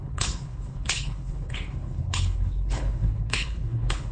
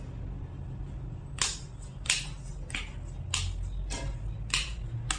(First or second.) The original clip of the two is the second